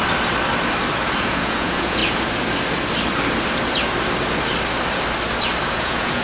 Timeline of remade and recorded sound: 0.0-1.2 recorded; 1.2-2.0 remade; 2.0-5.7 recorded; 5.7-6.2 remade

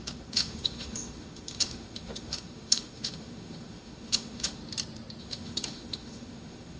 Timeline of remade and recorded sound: 0.0-4.6 remade; 4.6-5.2 recorded; 5.2-6.8 remade

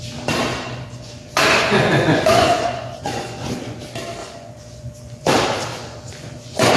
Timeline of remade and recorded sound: 0.0-0.5 recorded; 0.5-3.8 remade; 3.8-4.2 recorded; 4.2-5.3 remade; 5.3-5.7 recorded; 5.7-6.8 remade